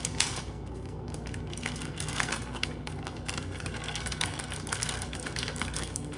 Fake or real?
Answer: fake